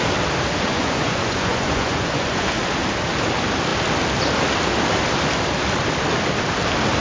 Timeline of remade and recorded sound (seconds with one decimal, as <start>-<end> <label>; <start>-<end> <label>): 0.0-0.7 recorded; 0.7-2.6 remade; 2.6-7.0 recorded